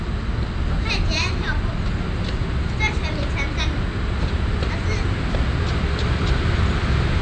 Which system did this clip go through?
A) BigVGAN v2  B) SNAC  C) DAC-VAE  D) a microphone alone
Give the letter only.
D